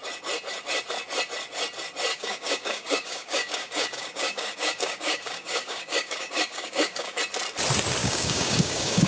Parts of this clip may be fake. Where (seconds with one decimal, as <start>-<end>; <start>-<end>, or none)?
2.1-7.2; 8.0-9.1